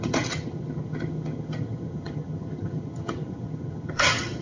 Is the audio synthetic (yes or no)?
yes